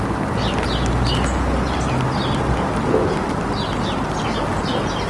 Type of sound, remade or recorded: recorded